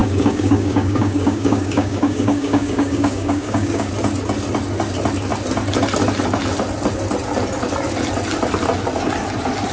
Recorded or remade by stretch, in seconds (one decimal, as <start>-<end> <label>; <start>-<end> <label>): 0.0-3.9 remade; 3.9-9.7 recorded